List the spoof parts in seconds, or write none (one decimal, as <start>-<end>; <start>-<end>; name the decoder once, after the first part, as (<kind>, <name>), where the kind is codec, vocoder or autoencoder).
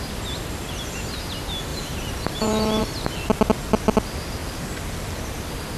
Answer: 1.7-3.4 (vocoder, BigVGAN v2); 4.4-5.2